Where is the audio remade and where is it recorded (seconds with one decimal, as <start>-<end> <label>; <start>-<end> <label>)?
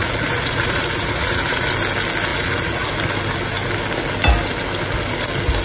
0.0-1.7 remade; 1.7-2.3 recorded; 2.3-2.9 remade; 2.9-5.6 recorded